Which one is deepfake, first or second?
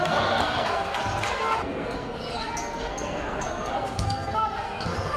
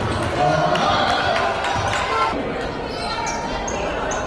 first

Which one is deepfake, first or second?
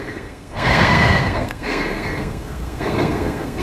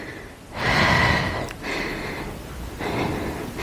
first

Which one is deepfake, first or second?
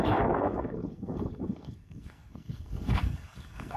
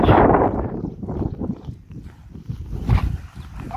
first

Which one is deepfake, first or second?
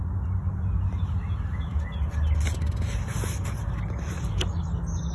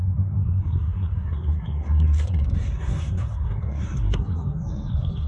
second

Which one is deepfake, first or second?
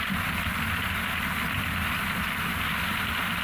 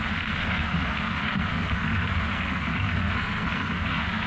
second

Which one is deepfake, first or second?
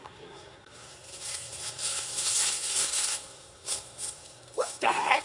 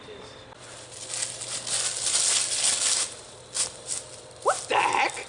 first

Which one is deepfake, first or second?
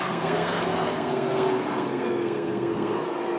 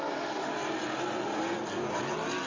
first